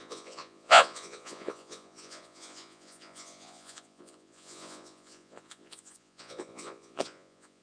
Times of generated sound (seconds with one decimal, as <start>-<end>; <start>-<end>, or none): 0.0-7.6